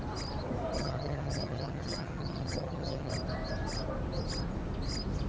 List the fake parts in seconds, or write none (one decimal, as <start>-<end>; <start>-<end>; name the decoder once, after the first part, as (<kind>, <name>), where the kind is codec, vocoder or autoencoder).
0.8-3.1 (vocoder, HiFi-GAN)